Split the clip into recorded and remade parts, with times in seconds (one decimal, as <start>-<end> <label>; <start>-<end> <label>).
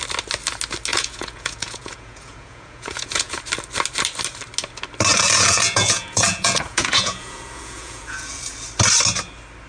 0.0-0.9 recorded; 0.9-3.3 remade; 3.3-5.1 recorded; 5.1-8.4 remade; 8.4-9.7 recorded